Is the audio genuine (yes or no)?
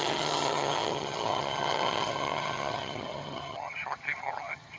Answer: no